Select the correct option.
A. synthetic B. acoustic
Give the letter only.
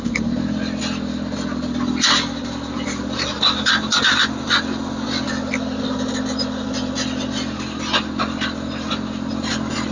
B